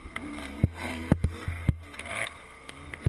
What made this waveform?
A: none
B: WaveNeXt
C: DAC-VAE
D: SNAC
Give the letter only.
D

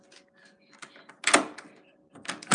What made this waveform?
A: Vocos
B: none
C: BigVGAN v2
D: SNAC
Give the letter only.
B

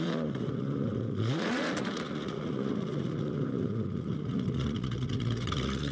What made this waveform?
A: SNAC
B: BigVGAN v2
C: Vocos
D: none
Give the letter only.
C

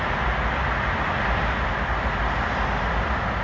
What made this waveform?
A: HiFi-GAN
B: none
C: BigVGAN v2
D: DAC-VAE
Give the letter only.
B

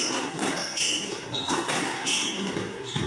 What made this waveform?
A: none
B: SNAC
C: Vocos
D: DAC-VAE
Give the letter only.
B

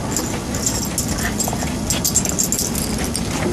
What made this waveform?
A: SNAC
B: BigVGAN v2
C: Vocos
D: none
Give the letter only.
D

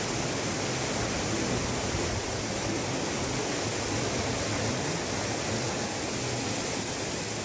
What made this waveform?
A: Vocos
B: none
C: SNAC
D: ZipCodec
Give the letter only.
B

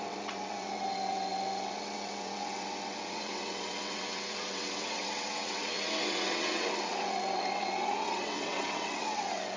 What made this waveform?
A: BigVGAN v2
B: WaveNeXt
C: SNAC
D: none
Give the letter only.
B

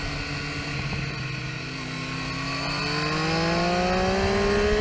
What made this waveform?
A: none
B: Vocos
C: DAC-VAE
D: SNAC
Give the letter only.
A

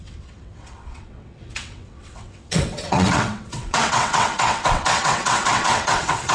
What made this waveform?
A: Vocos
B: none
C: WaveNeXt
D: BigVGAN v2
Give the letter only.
C